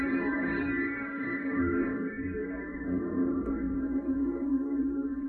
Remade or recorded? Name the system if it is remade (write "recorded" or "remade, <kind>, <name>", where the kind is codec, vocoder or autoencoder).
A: remade, codec, DAC